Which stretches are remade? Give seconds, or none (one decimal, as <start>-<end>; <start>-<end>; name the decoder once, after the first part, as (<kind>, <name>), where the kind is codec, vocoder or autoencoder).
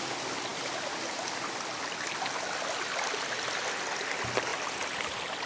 none